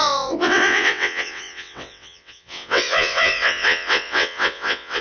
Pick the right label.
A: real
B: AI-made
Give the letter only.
B